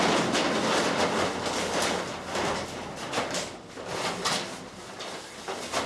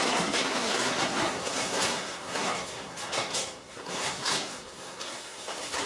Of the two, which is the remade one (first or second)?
second